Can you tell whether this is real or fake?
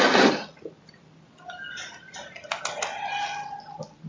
real